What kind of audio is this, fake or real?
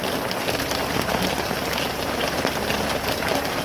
real